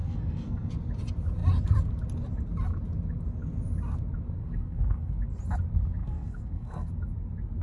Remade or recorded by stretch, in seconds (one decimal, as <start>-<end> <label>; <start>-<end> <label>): 0.0-0.7 remade; 0.7-4.4 recorded; 4.4-5.1 remade; 5.1-6.0 recorded; 6.0-6.9 remade; 6.9-7.6 recorded